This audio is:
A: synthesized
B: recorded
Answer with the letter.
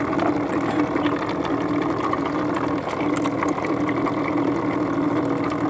B